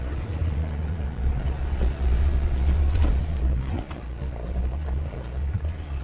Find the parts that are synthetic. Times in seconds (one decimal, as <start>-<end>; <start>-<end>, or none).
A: 0.0-6.0

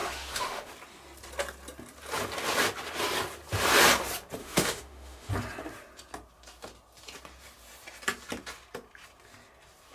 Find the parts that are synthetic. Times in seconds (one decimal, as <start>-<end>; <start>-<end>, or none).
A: 0.0-0.7; 4.4-5.3

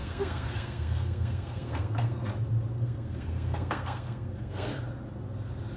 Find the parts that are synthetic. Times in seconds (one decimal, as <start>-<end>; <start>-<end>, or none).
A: 0.0-2.3; 2.7-4.8

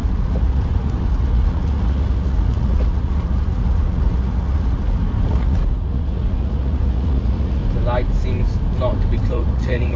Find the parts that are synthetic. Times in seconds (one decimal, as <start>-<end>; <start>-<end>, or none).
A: 0.0-4.8; 5.3-7.6; 9.3-10.0

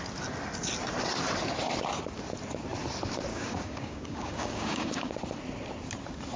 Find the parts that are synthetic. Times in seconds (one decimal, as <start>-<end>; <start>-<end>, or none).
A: 3.3-5.1

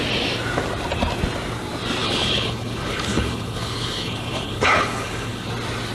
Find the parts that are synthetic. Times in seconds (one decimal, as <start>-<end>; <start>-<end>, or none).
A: 2.0-5.5

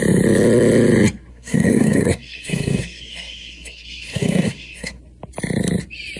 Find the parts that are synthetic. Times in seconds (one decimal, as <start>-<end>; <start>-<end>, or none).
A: 1.3-5.0